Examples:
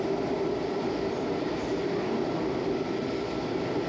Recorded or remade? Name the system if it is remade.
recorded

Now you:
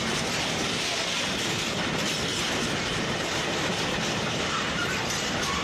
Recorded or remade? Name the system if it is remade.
remade, vocoder, BigVGAN v2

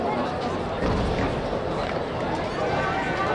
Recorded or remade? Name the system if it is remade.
recorded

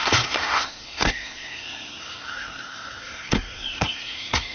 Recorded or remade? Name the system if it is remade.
remade, codec, SNAC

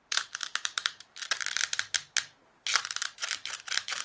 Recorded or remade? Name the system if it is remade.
remade, vocoder, BigVGAN v2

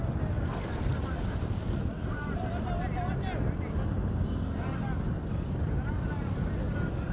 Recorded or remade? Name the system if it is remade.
recorded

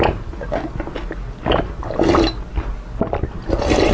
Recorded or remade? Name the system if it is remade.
recorded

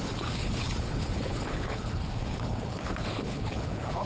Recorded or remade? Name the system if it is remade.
remade, codec, HILCodec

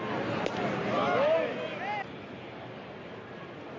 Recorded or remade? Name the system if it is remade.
recorded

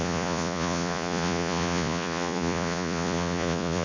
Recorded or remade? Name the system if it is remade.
remade, vocoder, Vocos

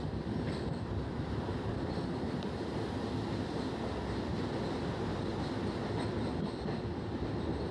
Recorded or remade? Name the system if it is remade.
recorded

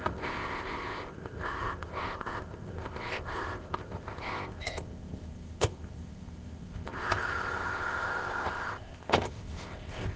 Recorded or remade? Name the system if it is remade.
remade, codec, ZipCodec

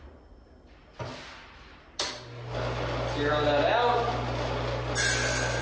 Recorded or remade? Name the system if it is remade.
recorded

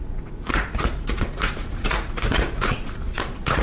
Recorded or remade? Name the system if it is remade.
remade, vocoder, Vocos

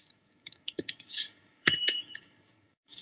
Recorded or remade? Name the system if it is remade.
remade, codec, DAC